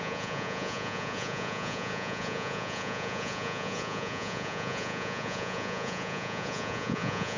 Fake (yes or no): yes